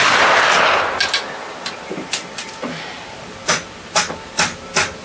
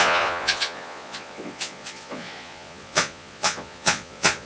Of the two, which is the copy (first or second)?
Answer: second